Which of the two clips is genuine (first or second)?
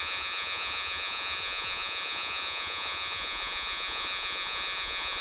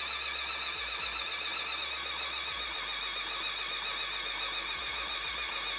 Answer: second